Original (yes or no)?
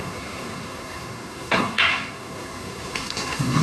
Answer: no